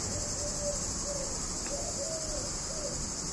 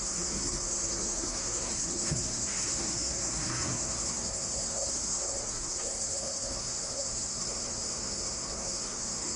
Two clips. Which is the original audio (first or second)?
first